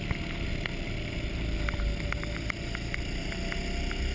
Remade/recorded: recorded